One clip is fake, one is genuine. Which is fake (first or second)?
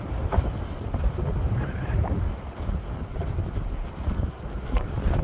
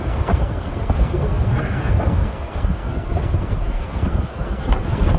second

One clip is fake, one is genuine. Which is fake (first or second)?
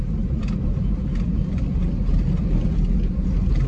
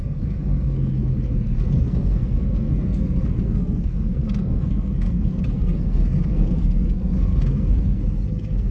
second